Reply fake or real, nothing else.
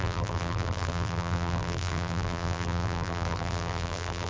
fake